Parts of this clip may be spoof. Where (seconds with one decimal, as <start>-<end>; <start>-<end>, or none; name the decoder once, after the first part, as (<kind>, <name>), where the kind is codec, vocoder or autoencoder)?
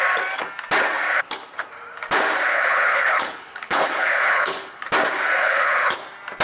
2.5-4.9 (codec, HILCodec); 5.4-6.0